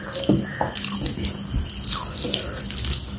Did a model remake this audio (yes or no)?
no